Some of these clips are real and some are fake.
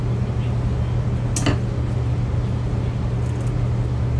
real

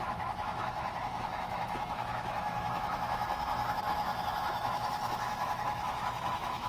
fake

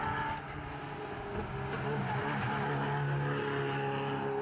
real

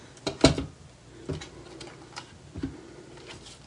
real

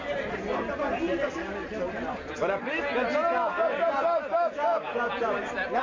real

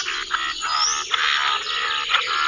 real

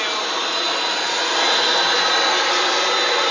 real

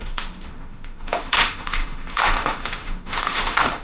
fake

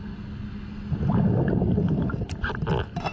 real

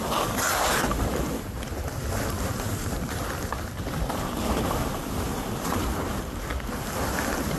real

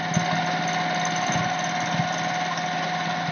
real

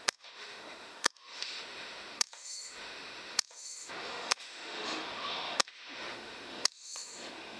fake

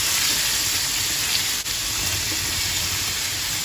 real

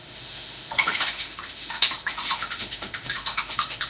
fake